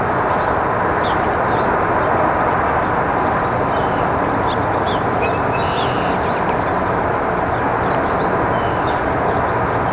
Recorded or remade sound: recorded